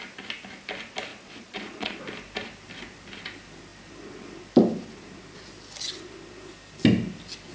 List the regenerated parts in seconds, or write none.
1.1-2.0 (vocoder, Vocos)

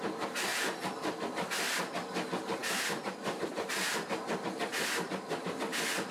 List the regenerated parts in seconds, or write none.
none

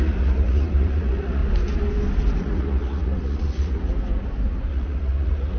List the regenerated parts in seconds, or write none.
0.0-1.4 (vocoder, Vocos); 2.4-3.9; 4.7-5.6

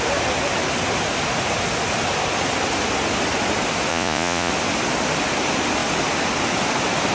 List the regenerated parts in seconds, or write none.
3.9-4.5 (vocoder, Vocos)